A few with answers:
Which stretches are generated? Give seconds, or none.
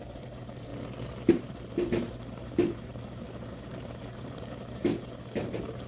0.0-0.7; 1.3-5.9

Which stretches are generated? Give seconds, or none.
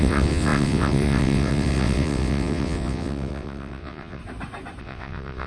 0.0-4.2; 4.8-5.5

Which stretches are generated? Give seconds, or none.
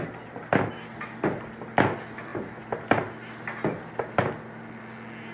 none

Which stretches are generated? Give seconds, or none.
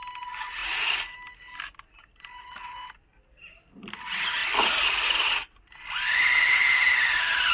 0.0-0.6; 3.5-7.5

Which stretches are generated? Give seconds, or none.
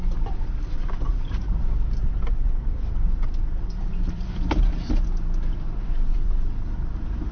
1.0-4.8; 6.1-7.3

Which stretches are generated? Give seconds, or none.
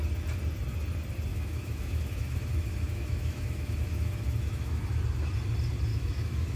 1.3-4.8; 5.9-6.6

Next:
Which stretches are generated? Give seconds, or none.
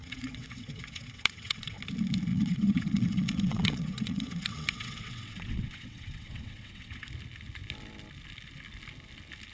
0.0-1.8; 2.3-7.1